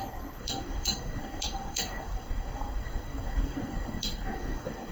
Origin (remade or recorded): remade